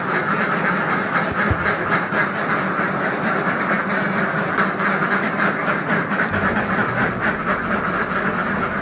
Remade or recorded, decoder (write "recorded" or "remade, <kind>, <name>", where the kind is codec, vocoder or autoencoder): recorded